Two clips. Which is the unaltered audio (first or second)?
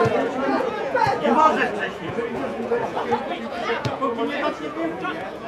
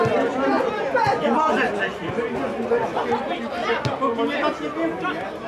second